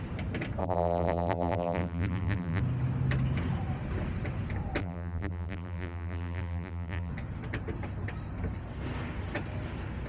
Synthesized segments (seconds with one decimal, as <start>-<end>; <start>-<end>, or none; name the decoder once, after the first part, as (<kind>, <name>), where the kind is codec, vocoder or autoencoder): 0.6-2.6 (vocoder, BigVGAN v2); 4.8-7.1